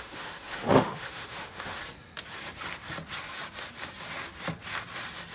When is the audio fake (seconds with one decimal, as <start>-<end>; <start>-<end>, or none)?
0.0-1.8